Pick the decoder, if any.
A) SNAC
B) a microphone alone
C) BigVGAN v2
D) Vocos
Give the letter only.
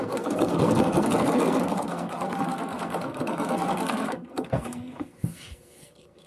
A